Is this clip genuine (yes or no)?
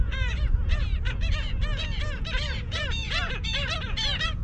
no